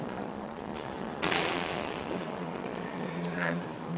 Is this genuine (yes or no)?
no